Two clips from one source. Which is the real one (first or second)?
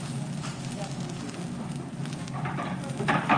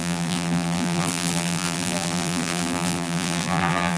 first